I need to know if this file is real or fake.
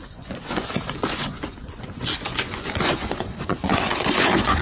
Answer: fake